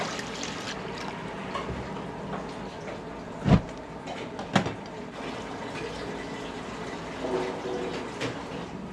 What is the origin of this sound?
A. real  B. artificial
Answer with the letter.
A